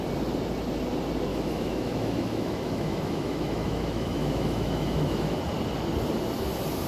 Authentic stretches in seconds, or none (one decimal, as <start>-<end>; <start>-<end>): 0.0-1.3; 5.4-6.9